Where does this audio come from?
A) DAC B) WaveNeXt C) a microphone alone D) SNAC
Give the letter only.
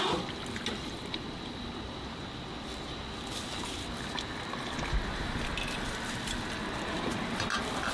C